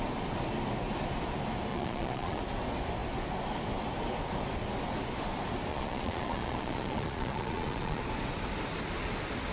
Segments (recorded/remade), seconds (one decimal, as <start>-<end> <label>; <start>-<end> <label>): 0.0-1.7 recorded; 1.7-2.4 remade; 2.4-5.7 recorded; 5.7-8.0 remade; 8.0-9.5 recorded